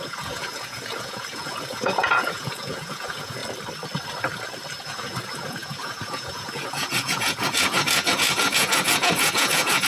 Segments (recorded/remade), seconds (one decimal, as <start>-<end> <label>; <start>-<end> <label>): 0.0-3.4 remade; 3.4-4.8 recorded; 4.8-9.9 remade